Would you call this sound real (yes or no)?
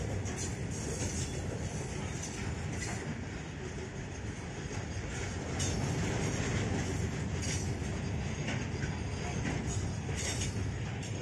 yes